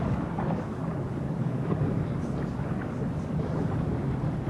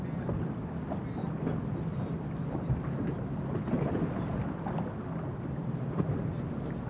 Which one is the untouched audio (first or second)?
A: second